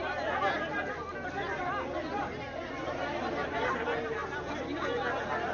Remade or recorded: recorded